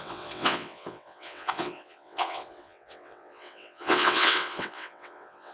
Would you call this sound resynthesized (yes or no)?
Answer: yes